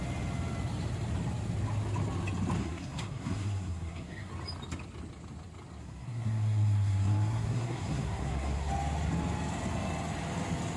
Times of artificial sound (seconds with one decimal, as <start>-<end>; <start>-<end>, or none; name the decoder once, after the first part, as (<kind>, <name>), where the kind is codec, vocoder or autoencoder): 2.6-4.3 (codec, SNAC); 5.8-8.7